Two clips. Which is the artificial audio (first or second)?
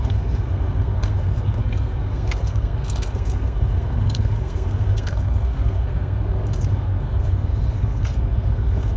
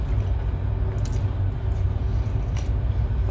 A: first